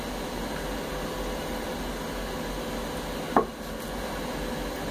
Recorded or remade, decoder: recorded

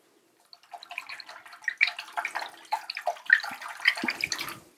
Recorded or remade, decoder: recorded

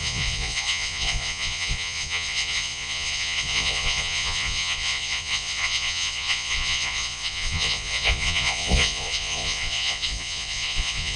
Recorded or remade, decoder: remade, vocoder, Vocos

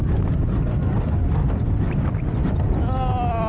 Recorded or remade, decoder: recorded